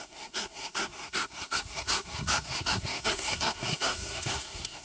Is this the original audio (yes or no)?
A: no